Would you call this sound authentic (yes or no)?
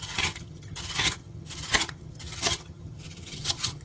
no